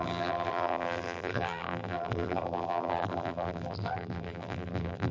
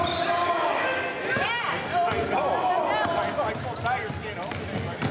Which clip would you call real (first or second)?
second